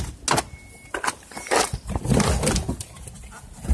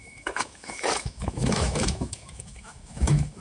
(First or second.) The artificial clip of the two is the second